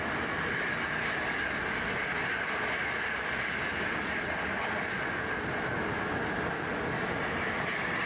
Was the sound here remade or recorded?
recorded